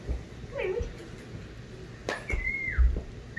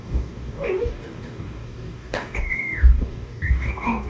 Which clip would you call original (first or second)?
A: first